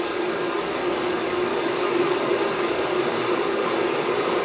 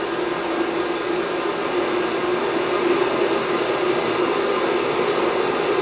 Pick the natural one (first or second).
second